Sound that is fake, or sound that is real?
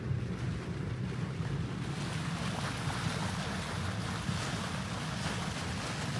real